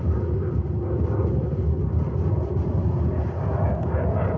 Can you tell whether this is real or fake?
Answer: real